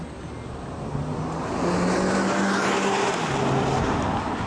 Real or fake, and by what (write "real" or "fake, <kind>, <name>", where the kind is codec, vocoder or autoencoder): real